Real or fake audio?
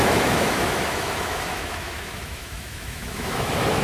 fake